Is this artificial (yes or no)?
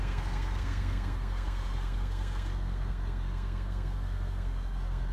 yes